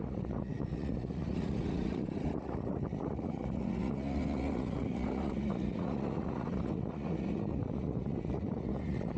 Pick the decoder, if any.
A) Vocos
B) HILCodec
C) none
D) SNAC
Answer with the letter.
A